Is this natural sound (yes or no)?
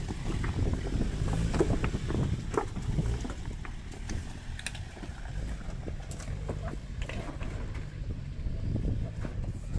yes